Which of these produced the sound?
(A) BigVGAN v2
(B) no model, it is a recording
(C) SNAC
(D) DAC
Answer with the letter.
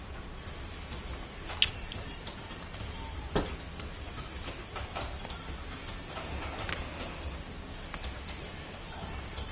B